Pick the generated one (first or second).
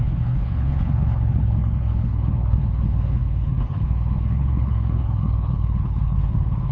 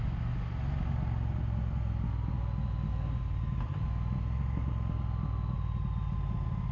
first